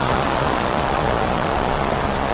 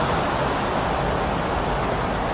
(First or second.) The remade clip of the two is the first